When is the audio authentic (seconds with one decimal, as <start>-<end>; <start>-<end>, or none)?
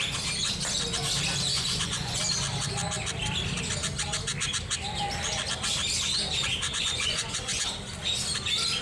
0.0-1.5; 2.2-6.7; 7.6-8.8